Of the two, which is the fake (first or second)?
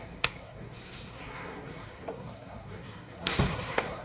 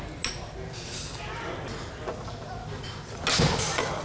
first